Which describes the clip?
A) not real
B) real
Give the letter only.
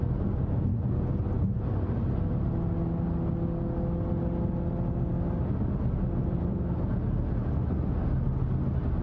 B